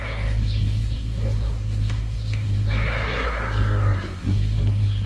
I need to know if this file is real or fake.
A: fake